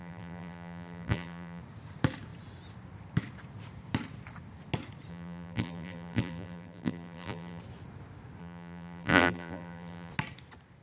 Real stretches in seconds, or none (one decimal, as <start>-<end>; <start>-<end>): 1.6-5.1; 7.6-8.4; 10.1-10.8